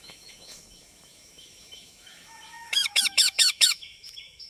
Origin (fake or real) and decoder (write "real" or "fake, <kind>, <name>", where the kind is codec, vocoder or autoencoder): fake, autoencoder, DAC-VAE